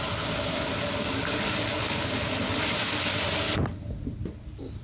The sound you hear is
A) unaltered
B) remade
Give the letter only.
A